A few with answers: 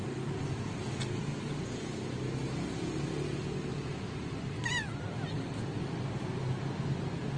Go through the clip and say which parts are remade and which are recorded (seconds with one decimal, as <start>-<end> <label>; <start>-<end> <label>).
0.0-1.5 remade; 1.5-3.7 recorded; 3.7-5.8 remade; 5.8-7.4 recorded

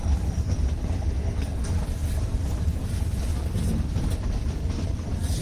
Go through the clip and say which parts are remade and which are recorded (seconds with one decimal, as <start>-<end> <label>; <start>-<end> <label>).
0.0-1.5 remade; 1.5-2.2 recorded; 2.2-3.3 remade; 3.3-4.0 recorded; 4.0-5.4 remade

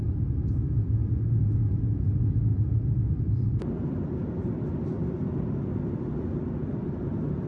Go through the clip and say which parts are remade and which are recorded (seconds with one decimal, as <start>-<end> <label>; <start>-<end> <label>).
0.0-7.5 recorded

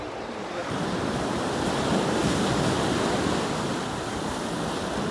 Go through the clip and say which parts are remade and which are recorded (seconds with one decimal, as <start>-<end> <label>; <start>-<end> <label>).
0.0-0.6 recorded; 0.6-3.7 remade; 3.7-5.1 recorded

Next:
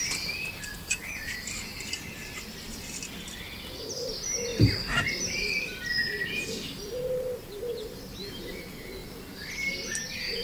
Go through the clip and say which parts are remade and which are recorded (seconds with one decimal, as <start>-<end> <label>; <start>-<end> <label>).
0.0-0.7 recorded; 0.7-2.4 remade; 2.4-4.5 recorded; 4.5-8.6 remade; 8.6-9.0 recorded; 9.0-9.5 remade; 9.5-10.4 recorded

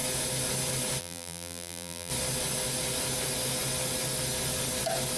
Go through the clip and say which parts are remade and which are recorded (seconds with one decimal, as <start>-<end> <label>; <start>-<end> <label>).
0.0-1.0 recorded; 1.0-2.1 remade; 2.1-5.2 recorded

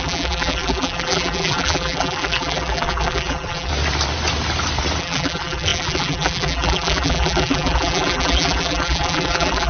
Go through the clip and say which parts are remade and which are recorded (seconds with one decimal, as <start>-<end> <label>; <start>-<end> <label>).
0.0-3.7 remade; 3.7-5.0 recorded; 5.0-9.7 remade